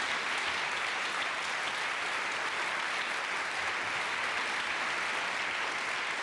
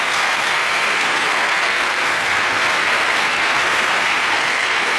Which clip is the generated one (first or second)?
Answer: second